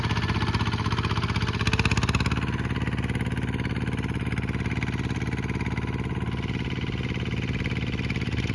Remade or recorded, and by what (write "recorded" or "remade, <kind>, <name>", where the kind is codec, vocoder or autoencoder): recorded